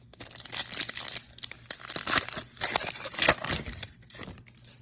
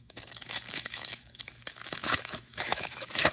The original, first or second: first